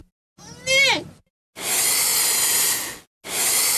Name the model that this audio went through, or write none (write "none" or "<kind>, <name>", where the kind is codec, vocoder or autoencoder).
none